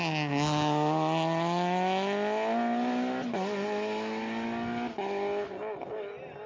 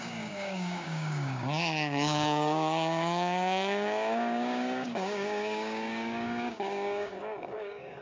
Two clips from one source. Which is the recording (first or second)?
first